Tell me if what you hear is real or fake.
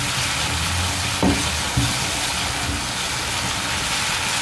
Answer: real